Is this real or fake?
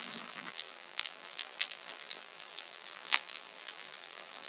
fake